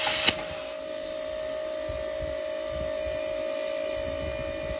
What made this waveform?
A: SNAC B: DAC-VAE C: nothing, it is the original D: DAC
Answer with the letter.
C